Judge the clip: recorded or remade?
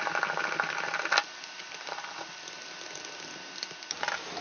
recorded